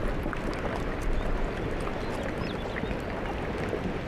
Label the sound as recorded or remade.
recorded